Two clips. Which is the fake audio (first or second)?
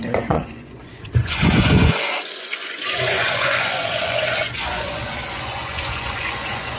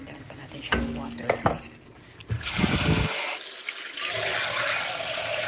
first